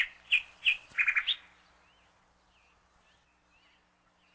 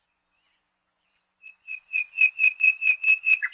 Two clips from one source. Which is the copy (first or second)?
second